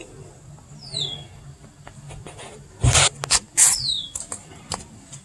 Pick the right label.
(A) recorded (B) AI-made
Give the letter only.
A